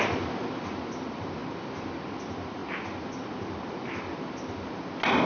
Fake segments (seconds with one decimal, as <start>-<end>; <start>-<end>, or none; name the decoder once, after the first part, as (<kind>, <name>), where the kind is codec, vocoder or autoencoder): none